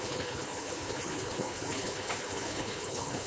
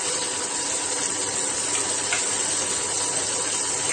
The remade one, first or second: first